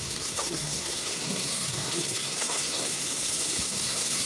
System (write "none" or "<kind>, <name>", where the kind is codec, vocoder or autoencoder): codec, SNAC